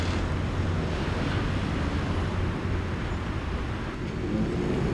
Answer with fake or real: real